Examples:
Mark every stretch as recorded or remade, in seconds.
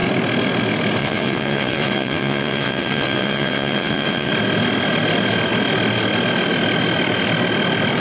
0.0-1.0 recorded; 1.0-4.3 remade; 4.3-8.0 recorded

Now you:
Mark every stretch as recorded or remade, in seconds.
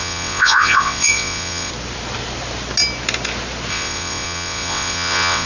0.0-1.7 remade; 1.7-3.7 recorded; 3.7-5.5 remade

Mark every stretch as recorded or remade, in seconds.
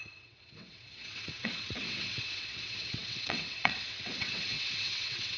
0.0-5.4 remade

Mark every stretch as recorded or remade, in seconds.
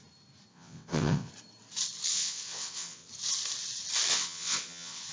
0.0-0.5 recorded; 0.5-1.3 remade; 1.3-2.1 recorded; 2.1-3.1 remade; 3.1-4.1 recorded; 4.1-5.1 remade